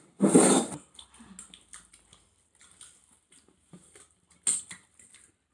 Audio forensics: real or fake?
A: real